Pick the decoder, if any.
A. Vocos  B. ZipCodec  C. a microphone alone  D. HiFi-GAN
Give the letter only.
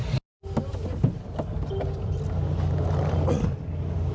C